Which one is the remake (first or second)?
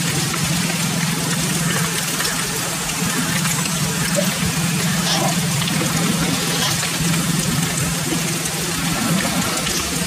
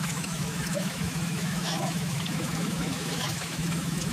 second